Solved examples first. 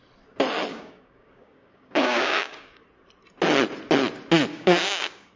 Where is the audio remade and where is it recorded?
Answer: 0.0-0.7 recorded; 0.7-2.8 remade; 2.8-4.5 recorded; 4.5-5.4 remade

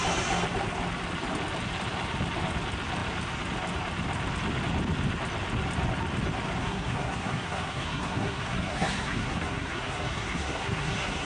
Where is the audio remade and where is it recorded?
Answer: 0.0-6.6 recorded; 6.6-11.3 remade

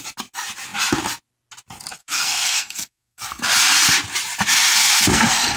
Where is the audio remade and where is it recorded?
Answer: 0.0-2.0 recorded; 2.0-3.4 remade; 3.4-4.7 recorded; 4.7-5.6 remade

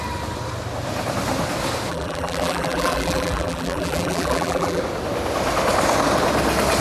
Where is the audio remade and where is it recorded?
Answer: 0.0-1.9 recorded; 1.9-4.8 remade; 4.8-6.8 recorded

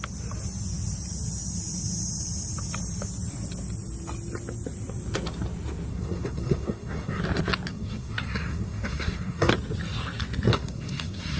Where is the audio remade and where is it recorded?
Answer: 0.0-5.9 recorded; 5.9-7.2 remade; 7.2-7.7 recorded; 7.7-9.5 remade; 9.5-10.5 recorded; 10.5-11.4 remade